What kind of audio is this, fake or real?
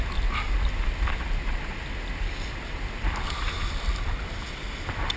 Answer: real